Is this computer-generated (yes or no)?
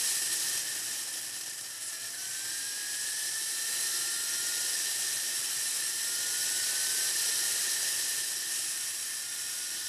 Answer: yes